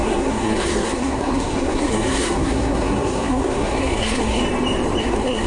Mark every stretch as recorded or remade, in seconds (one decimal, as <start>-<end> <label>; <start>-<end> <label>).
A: 0.0-4.4 remade; 4.4-5.0 recorded; 5.0-5.5 remade